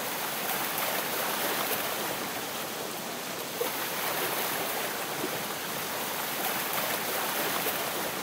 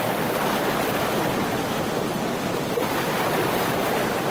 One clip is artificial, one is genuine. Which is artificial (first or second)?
first